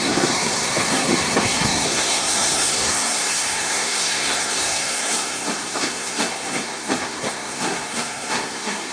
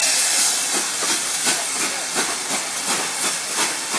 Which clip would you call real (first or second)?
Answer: second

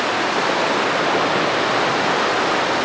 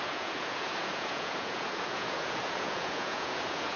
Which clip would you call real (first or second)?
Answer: first